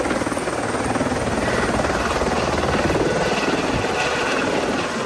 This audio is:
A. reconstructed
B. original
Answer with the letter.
B